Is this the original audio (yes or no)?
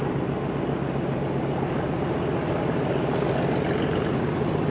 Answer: yes